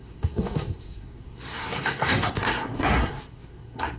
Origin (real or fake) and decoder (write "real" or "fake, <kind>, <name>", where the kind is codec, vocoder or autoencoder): fake, codec, SNAC